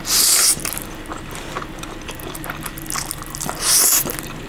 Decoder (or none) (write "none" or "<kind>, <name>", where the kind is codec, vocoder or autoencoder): none